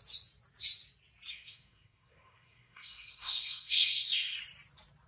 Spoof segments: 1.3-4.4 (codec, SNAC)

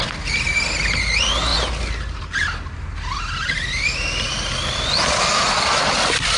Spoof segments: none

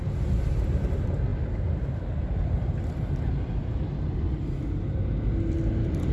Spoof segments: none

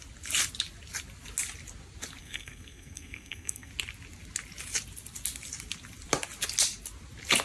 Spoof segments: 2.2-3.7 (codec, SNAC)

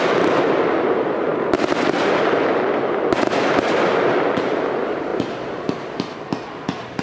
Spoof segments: none

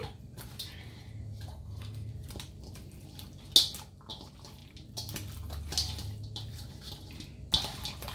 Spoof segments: 1.5-2.1 (codec, SNAC)

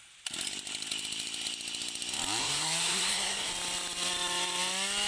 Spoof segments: 2.4-3.5 (codec, SNAC)